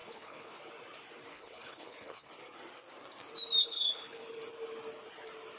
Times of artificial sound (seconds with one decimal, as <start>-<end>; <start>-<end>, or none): 0.0-0.6; 1.3-2.3; 3.6-4.2